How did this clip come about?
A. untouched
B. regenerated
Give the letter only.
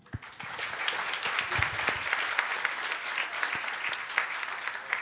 A